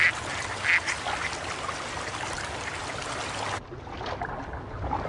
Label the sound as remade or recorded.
recorded